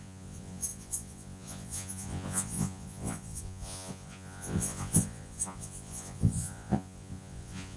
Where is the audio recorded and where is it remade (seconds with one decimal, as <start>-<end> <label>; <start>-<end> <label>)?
0.0-7.8 remade